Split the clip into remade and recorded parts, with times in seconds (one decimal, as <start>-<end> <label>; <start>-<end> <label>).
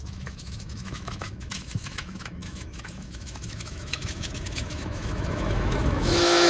0.0-6.5 remade